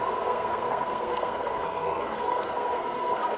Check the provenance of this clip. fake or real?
fake